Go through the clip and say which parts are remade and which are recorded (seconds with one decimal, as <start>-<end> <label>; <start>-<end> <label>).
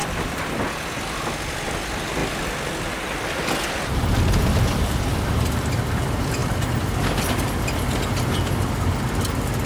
0.0-9.7 recorded